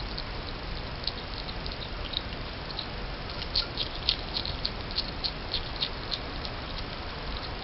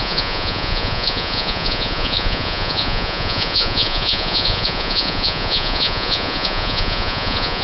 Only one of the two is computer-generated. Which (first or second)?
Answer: second